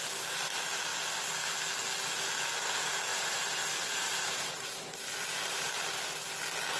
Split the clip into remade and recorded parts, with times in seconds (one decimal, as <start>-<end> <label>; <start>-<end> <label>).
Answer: 0.0-3.1 recorded; 3.1-5.1 remade; 5.1-6.8 recorded

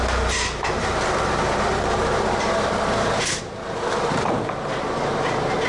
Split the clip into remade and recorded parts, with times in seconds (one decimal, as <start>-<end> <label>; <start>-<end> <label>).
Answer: 0.0-3.4 remade; 3.4-5.7 recorded